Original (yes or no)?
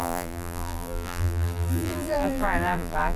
no